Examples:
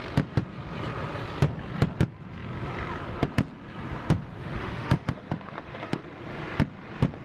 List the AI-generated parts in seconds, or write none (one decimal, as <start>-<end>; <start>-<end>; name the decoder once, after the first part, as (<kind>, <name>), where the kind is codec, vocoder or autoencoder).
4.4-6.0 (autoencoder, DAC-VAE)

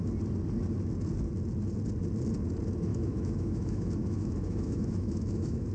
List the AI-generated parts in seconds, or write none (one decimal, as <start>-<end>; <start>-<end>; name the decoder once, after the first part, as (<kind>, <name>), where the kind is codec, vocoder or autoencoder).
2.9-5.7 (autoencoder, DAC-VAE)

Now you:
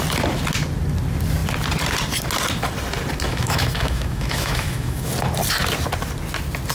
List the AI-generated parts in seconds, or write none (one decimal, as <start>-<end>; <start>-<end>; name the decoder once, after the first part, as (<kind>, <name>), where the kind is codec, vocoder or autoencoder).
3.3-5.1 (autoencoder, DAC-VAE)